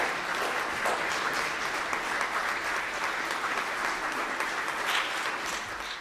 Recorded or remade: recorded